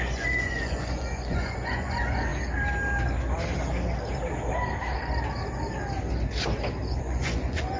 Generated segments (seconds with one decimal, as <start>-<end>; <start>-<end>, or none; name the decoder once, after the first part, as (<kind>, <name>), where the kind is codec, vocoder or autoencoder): 0.0-2.3 (vocoder, Vocos); 7.0-7.8